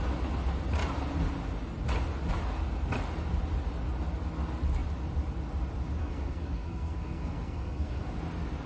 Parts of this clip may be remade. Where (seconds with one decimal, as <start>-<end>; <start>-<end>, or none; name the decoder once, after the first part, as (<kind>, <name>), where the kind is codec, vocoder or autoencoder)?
6.0-8.1 (codec, SNAC)